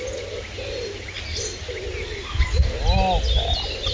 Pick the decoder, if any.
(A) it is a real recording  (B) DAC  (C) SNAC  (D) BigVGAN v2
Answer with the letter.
A